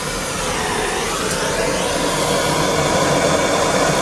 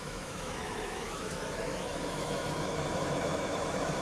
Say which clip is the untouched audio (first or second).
first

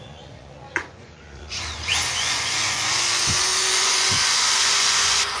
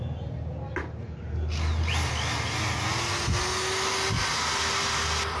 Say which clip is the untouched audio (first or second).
second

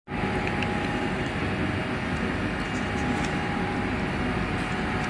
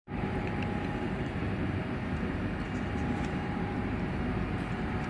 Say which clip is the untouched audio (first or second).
first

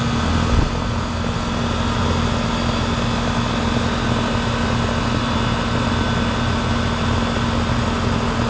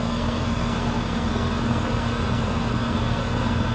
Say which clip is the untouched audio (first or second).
first